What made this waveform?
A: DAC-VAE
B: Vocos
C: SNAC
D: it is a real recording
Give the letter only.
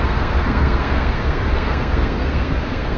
C